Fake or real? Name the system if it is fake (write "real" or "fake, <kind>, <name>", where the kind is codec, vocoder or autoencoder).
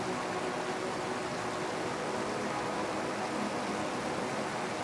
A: real